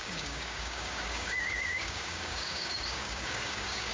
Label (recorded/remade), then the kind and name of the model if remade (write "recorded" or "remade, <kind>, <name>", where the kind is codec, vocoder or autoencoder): remade, codec, DAC